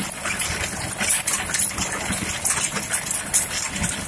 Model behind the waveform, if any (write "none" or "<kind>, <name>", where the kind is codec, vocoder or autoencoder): none